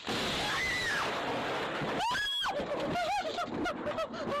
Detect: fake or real real